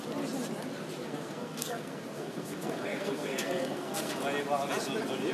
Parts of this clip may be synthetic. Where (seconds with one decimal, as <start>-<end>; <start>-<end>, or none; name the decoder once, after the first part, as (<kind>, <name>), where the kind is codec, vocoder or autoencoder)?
1.0-4.2 (codec, SNAC)